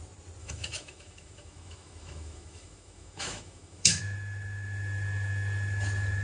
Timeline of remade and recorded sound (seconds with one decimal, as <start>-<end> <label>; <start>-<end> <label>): 0.0-0.4 recorded; 0.4-4.0 remade; 4.0-6.2 recorded